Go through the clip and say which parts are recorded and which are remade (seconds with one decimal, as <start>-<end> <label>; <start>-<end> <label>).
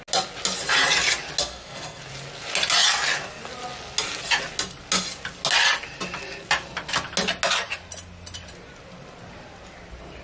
0.0-1.4 recorded; 1.4-2.0 remade; 2.0-10.2 recorded